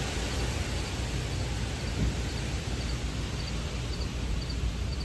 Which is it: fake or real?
real